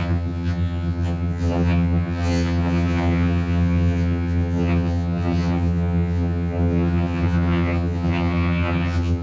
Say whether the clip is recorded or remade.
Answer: remade